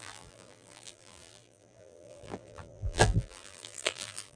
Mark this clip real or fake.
fake